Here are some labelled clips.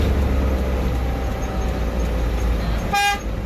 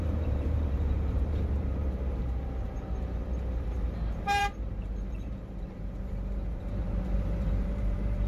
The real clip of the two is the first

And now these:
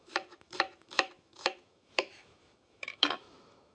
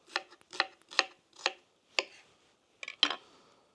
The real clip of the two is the second